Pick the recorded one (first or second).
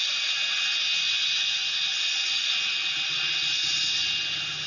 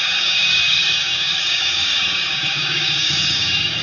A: first